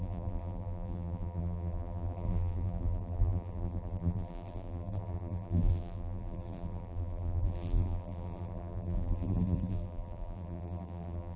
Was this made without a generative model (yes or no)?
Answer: no